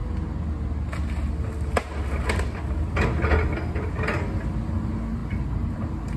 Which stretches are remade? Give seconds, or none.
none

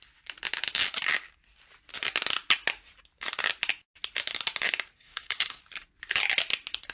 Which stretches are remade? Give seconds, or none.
4.9-5.6 (codec, SNAC)

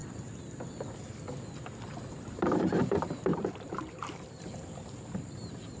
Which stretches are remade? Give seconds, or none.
2.2-5.8 (vocoder, BigVGAN v2)

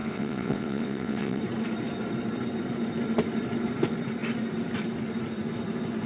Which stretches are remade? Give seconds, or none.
0.0-1.4 (vocoder, WaveNeXt)